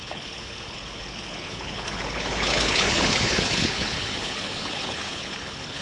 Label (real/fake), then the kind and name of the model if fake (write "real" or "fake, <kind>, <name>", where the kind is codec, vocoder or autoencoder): fake, codec, HILCodec